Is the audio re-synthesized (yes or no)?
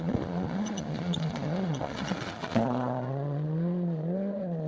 yes